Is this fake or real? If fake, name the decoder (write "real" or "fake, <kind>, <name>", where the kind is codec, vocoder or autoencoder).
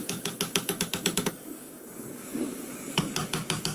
fake, codec, DAC